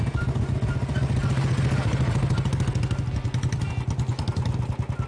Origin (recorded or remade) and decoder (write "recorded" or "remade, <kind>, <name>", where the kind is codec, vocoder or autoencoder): recorded